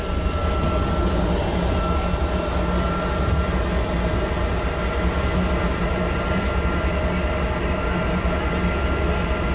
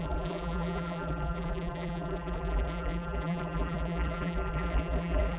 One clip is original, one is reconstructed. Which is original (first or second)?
first